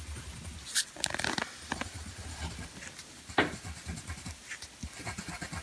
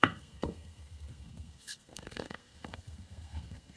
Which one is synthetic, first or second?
second